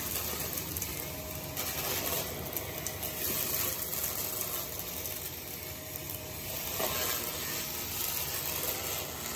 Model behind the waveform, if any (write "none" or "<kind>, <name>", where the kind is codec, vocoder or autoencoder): none